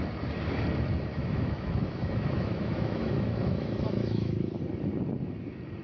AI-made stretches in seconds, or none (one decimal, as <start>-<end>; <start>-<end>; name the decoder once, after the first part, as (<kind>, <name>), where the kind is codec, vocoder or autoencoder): 1.1-4.6 (autoencoder, DAC-VAE)

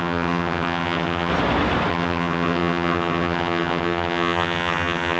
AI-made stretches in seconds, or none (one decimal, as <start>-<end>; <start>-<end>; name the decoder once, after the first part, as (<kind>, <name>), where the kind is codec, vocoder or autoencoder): 0.0-1.3 (vocoder, HiFi-GAN); 1.9-5.2

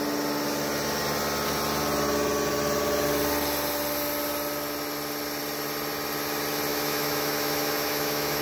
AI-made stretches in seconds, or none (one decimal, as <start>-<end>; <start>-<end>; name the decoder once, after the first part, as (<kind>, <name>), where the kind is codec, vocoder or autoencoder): 6.7-8.4 (autoencoder, DAC-VAE)